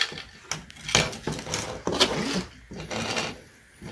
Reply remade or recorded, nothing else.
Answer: recorded